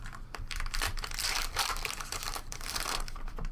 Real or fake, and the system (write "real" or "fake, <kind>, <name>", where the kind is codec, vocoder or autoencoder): fake, vocoder, BigVGAN v2